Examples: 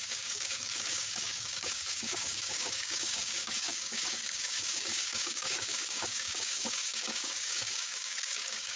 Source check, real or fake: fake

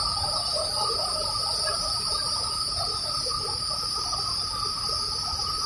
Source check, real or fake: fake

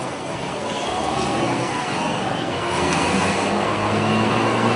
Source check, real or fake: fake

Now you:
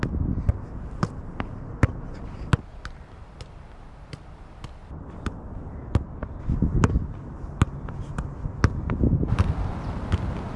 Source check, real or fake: real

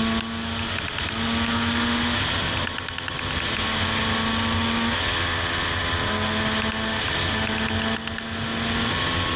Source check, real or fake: real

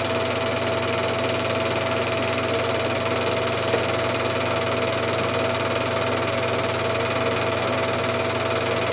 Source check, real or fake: real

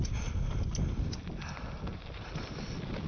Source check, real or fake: real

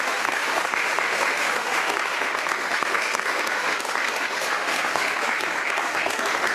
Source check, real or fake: fake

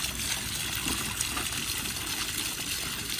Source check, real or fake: real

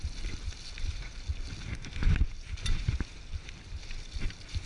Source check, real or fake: real